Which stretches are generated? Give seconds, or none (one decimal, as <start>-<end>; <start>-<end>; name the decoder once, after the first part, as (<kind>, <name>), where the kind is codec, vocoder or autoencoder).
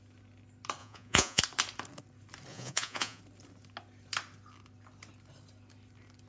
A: 0.8-1.4 (vocoder, Vocos); 2.5-3.2